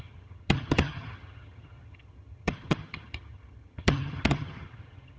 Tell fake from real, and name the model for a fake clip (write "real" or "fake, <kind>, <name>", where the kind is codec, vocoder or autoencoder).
fake, vocoder, HiFi-GAN